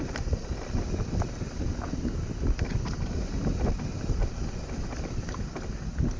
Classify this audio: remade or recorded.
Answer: recorded